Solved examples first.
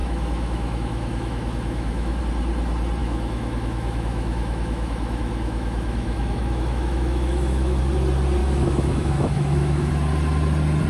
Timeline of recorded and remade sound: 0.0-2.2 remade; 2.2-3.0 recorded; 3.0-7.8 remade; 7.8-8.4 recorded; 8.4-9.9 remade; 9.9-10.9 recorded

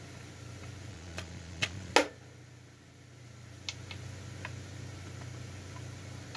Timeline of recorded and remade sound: 0.0-0.9 recorded; 0.9-1.9 remade; 1.9-6.4 recorded

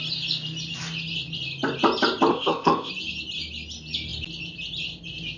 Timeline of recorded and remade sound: 0.0-2.3 recorded; 2.3-2.9 remade; 2.9-5.4 recorded

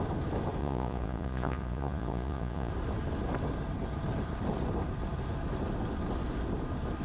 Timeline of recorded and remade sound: 0.0-0.6 recorded; 0.6-2.7 remade; 2.7-7.0 recorded

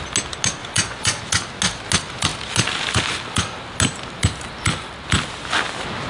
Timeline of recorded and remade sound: 0.0-0.6 recorded; 0.6-1.2 remade; 1.2-6.1 recorded

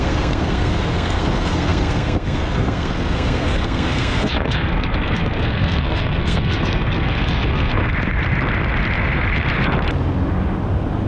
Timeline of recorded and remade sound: 0.0-7.9 remade; 7.9-11.1 recorded